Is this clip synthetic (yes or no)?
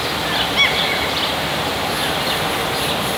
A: no